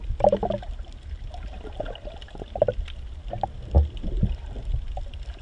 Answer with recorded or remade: recorded